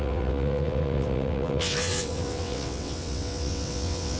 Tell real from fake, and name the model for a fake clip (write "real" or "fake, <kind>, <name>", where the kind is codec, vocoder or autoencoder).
fake, vocoder, WaveNeXt